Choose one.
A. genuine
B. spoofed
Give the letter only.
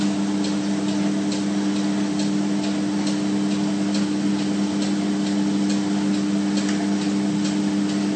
A